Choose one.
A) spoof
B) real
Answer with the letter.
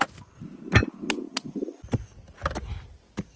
B